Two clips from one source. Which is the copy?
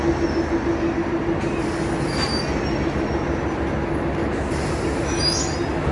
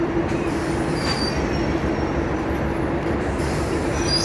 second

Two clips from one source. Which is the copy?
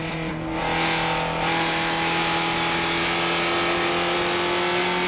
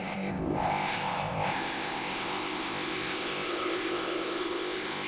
second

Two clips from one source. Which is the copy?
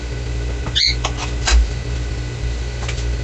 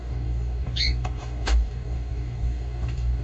second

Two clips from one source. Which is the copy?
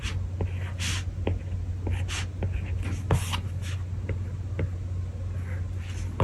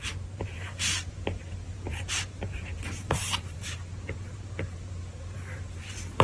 second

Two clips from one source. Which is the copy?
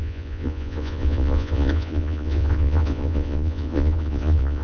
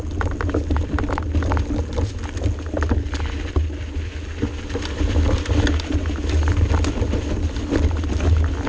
first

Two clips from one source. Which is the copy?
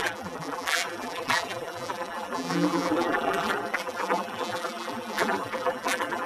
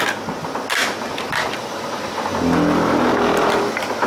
first